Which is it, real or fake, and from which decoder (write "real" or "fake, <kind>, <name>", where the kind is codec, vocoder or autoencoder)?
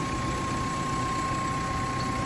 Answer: real